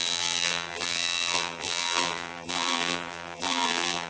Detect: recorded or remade remade